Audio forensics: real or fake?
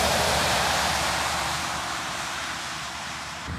fake